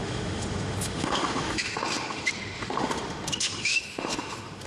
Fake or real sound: fake